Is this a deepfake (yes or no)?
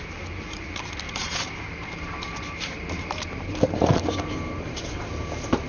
yes